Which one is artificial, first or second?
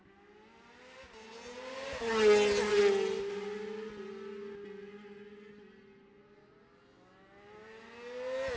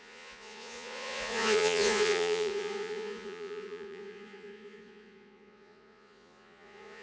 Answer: second